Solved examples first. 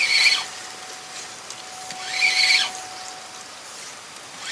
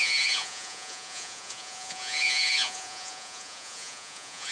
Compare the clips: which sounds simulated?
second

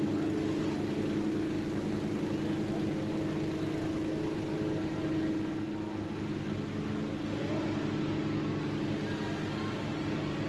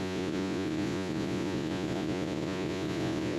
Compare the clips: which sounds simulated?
second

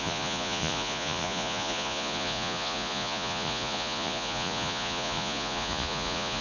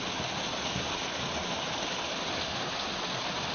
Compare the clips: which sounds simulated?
first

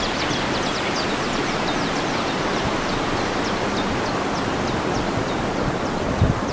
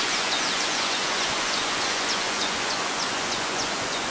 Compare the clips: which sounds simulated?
second